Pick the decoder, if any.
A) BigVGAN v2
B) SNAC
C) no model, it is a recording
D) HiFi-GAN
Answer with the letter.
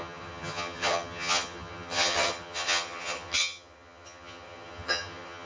D